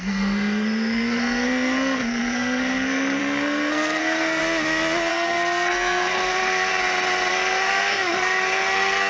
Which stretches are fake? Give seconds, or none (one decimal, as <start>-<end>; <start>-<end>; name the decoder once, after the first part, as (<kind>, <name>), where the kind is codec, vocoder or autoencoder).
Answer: 0.0-4.4 (codec, SNAC); 5.1-6.7; 7.3-9.1

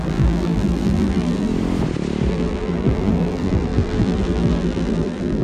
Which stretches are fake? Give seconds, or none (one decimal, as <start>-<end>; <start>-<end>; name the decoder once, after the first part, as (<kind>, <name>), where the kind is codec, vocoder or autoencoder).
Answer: 0.0-1.5 (vocoder, BigVGAN v2); 2.3-5.4

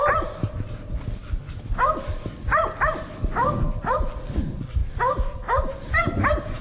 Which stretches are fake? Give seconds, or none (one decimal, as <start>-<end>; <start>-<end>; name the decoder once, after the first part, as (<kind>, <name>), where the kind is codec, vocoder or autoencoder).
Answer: none